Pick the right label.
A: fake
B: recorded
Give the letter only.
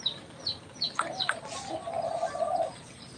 B